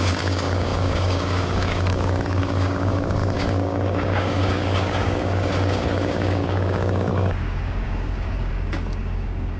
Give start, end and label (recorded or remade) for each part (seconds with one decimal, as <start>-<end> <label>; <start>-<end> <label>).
0.0-9.6 remade